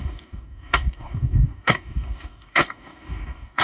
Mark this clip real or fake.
fake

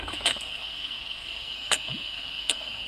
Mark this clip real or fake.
fake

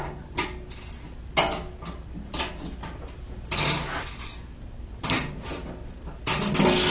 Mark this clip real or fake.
real